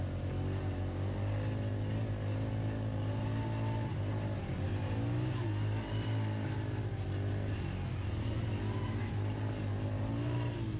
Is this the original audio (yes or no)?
yes